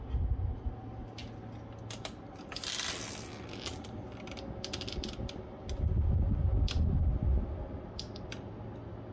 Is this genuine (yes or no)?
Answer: yes